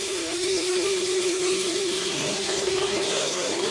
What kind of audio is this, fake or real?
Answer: fake